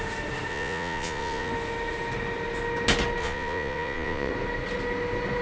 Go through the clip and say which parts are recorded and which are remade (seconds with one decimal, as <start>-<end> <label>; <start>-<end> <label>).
0.0-0.5 recorded; 0.5-1.5 remade; 1.5-3.2 recorded; 3.2-4.3 remade; 4.3-5.4 recorded